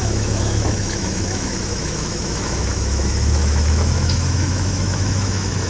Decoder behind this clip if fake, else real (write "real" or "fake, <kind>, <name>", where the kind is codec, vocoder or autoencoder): fake, autoencoder, DAC-VAE